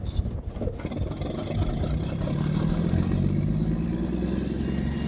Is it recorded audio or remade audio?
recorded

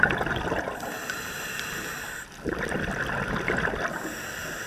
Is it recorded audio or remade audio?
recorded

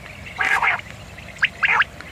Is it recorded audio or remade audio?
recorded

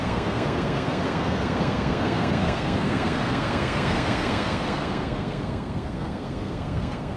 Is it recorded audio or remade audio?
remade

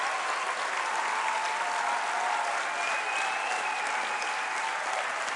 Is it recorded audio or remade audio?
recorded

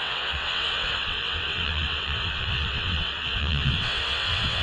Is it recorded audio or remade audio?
remade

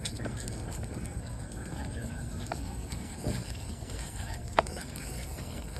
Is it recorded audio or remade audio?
remade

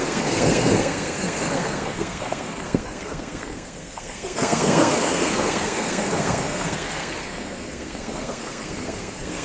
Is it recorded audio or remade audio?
remade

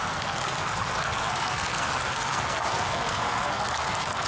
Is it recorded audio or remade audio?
remade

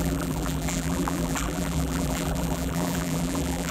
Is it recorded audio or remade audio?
remade